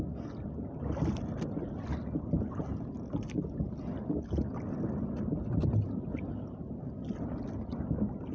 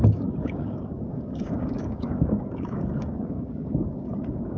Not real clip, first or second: second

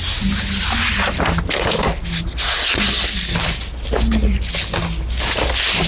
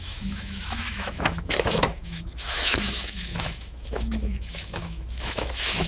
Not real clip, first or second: second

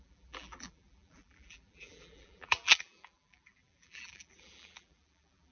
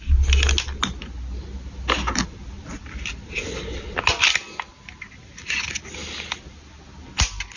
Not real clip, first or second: first